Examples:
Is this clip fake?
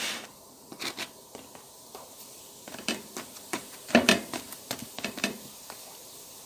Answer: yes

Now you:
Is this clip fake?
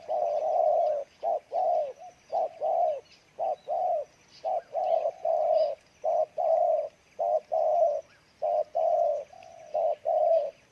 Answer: no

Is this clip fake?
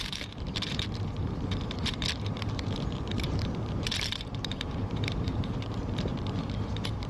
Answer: yes